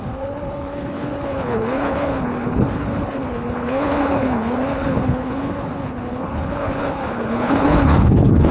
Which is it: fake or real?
fake